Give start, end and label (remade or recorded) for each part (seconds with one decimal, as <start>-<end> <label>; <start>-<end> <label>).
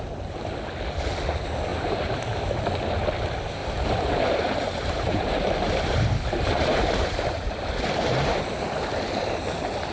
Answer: 0.0-1.7 recorded; 1.7-2.3 remade; 2.3-3.6 recorded; 3.6-7.5 remade; 7.5-9.9 recorded